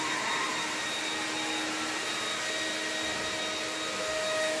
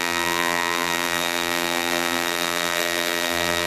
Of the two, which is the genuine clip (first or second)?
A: first